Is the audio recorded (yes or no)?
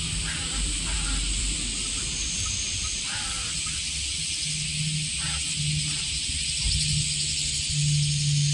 yes